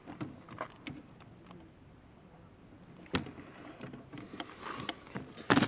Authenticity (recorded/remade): recorded